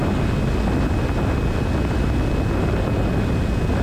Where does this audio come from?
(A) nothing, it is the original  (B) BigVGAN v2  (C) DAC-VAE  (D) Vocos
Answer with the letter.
A